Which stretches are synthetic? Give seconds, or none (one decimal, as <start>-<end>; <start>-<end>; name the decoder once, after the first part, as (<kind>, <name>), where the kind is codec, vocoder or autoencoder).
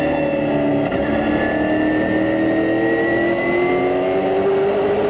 none